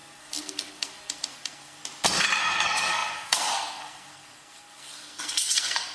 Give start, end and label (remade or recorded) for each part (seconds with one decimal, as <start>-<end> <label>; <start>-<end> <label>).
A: 0.0-1.8 remade; 1.8-2.4 recorded; 2.4-5.9 remade